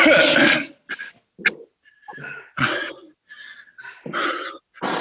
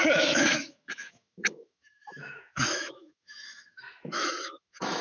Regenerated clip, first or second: second